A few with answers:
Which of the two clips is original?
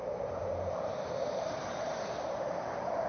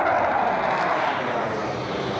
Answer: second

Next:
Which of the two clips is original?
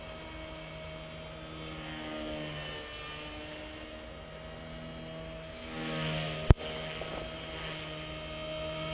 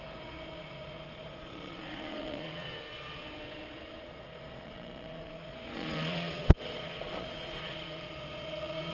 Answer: first